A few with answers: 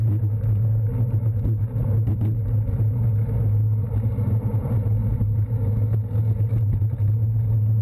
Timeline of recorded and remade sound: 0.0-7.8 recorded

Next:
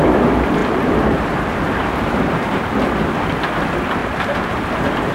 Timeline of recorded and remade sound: 0.0-0.6 recorded; 0.6-2.1 remade; 2.1-4.0 recorded; 4.0-4.5 remade; 4.5-5.1 recorded

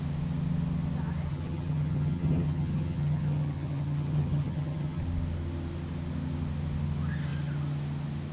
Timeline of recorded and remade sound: 0.0-1.3 recorded; 1.3-5.0 remade; 5.0-8.3 recorded

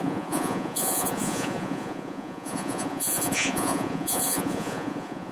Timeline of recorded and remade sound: 0.0-5.3 remade

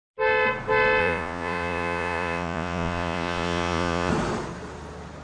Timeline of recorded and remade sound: 0.0-1.0 recorded; 1.0-4.1 remade; 4.1-5.2 recorded